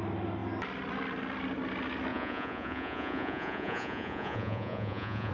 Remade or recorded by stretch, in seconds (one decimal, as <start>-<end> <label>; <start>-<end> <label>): 0.0-2.1 recorded; 2.1-5.3 remade